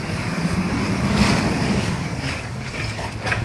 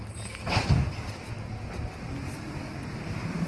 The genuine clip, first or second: second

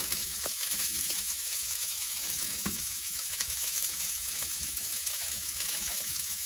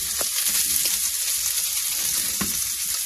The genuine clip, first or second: second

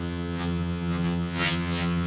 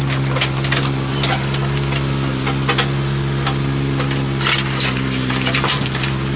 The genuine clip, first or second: second